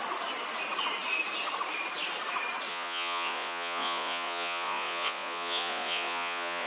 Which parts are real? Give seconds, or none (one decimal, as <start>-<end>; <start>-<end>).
0.0-2.7